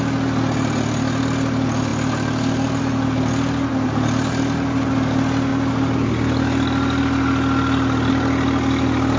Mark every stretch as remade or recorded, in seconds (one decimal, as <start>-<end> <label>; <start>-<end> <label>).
0.0-9.2 recorded